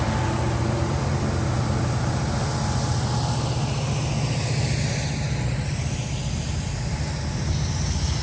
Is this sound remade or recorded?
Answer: recorded